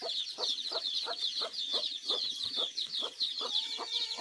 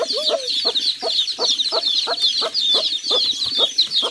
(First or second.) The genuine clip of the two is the second